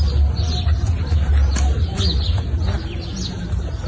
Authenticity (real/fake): real